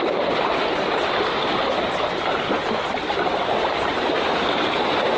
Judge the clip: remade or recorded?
recorded